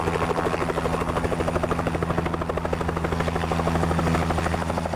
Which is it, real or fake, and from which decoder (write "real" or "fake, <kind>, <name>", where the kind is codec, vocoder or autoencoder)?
real